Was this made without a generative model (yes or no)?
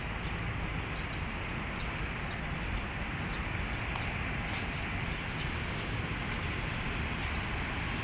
yes